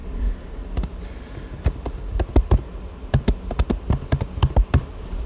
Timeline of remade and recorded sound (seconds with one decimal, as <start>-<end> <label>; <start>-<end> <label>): 0.0-5.3 recorded